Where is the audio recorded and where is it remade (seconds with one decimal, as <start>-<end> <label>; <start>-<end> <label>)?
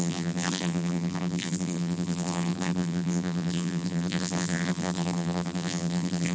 0.0-6.3 remade